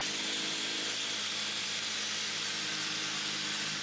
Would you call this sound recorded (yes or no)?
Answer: yes